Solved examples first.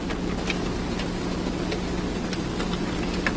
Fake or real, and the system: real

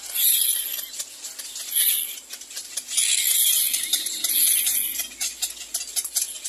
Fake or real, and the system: real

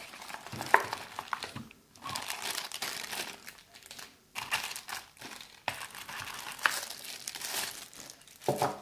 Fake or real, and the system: fake, vocoder, BigVGAN v2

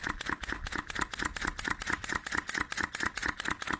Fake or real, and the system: real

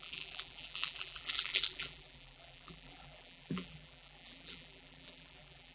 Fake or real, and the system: fake, vocoder, BigVGAN v2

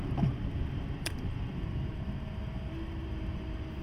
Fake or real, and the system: fake, vocoder, BigVGAN v2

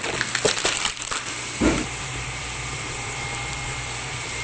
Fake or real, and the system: fake, vocoder, BigVGAN v2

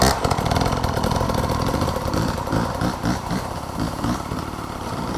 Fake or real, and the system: fake, vocoder, BigVGAN v2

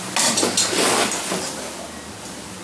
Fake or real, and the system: real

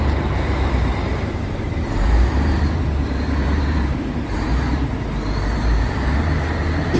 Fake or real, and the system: fake, vocoder, BigVGAN v2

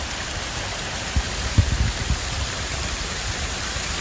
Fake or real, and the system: real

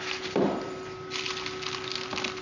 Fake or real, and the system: real